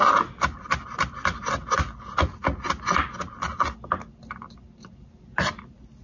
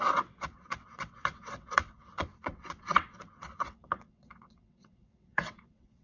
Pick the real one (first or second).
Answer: first